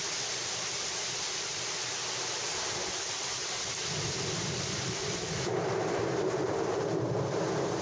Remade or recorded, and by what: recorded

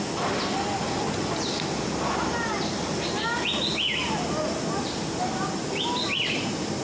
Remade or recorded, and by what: recorded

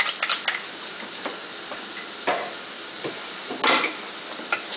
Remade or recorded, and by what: recorded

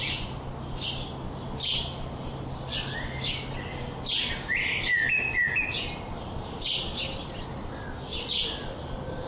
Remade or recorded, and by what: recorded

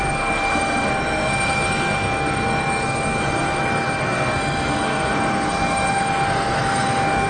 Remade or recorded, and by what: remade, codec, SNAC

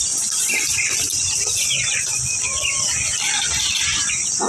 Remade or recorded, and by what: recorded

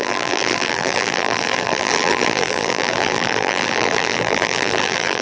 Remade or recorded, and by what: remade, vocoder, BigVGAN v2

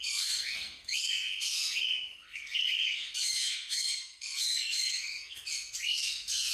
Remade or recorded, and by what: remade, codec, SNAC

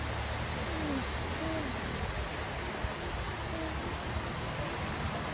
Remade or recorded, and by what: recorded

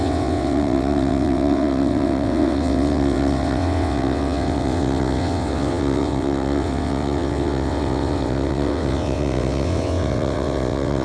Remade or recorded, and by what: remade, vocoder, WaveNeXt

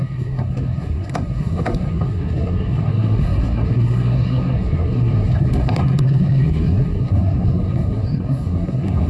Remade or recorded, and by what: remade, codec, SNAC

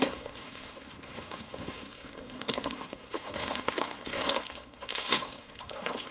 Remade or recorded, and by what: remade, codec, SNAC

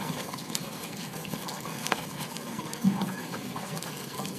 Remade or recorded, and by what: remade, codec, SNAC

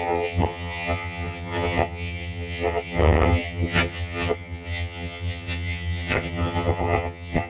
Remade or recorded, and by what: remade, vocoder, HiFi-GAN